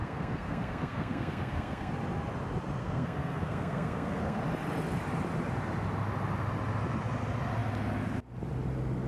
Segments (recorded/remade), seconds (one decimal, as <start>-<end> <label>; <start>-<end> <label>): 0.0-1.9 remade; 1.9-2.8 recorded; 2.8-4.4 remade; 4.4-9.1 recorded